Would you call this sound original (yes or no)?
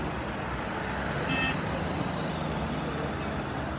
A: yes